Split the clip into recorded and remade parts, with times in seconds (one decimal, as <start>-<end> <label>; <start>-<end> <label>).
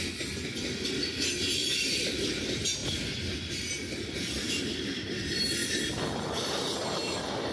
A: 0.0-7.5 recorded